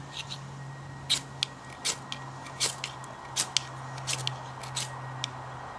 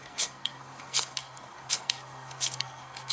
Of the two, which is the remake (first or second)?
second